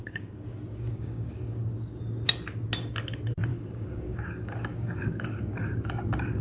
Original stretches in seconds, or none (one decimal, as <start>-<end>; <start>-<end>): 2.0-3.5; 5.9-6.4